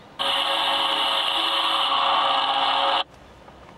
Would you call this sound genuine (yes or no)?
yes